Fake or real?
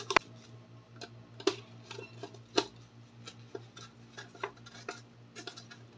real